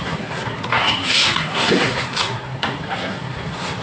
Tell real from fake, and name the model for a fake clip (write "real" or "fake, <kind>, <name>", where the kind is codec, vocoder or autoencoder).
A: fake, codec, SNAC